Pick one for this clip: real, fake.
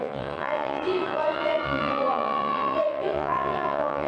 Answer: fake